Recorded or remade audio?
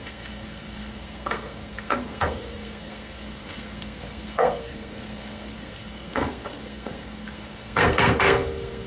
remade